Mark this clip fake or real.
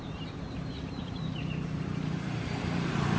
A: fake